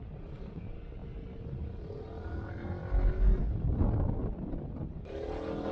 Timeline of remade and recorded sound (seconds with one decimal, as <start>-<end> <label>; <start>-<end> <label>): 0.0-5.7 recorded